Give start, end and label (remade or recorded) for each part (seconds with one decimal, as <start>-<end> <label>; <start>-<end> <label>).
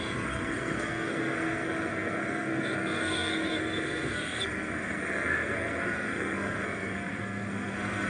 0.0-8.1 remade